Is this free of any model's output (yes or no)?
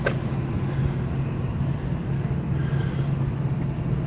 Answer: yes